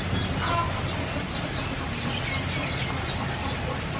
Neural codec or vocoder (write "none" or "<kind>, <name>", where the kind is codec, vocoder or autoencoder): none